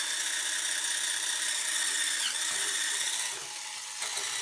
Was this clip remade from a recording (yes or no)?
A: no